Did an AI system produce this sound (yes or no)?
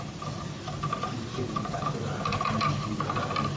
no